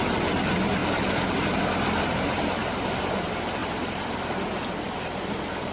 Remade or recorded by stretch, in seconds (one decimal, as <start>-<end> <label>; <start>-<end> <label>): 0.0-0.8 recorded; 0.8-3.1 remade; 3.1-3.6 recorded; 3.6-4.3 remade; 4.3-5.7 recorded